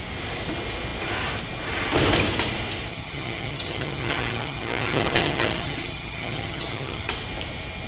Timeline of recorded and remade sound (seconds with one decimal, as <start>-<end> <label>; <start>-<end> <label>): 0.0-2.9 recorded; 2.9-7.1 remade; 7.1-7.9 recorded